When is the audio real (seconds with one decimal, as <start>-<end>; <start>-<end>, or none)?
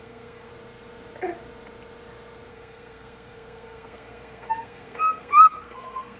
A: 0.5-2.5